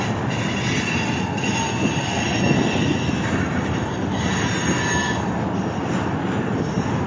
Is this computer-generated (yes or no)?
no